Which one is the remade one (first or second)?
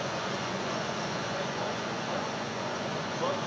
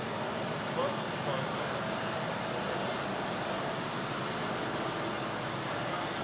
first